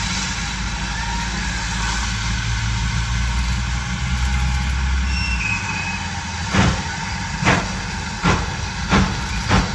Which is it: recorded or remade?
recorded